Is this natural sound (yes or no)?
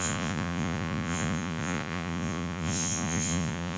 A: no